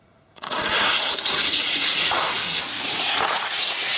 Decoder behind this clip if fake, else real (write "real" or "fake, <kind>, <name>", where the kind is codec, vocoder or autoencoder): fake, vocoder, Vocos